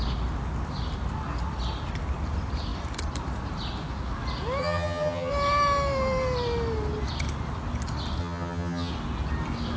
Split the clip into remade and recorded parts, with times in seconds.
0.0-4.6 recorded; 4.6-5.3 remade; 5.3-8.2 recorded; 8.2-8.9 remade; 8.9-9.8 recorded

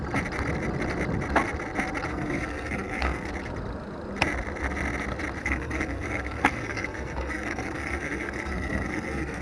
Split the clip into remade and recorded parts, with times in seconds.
0.0-2.1 recorded; 2.1-3.3 remade; 3.3-5.4 recorded; 5.4-9.4 remade